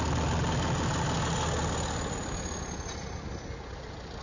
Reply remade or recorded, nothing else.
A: recorded